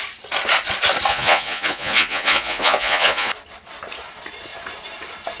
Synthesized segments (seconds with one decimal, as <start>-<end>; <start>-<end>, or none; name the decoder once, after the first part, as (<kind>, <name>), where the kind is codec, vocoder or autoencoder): 1.1-3.3 (vocoder, Vocos)